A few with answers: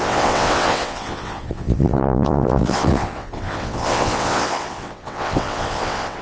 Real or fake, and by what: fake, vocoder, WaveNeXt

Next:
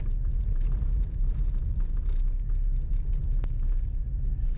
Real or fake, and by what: real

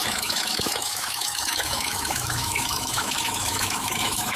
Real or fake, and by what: fake, autoencoder, DAC-VAE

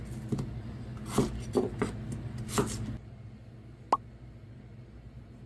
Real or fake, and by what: real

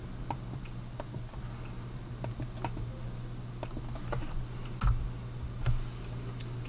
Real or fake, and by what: real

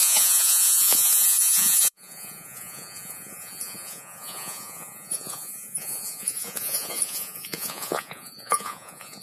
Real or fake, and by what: fake, vocoder, Vocos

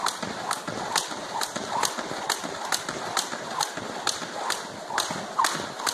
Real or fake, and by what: real